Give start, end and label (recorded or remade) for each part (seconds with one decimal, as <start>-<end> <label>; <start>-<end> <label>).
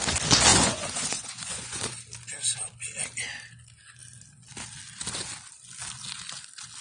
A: 0.0-0.5 recorded; 0.5-1.9 remade; 1.9-6.8 recorded